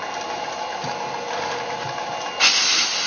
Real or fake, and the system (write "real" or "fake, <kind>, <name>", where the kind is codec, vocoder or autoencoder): real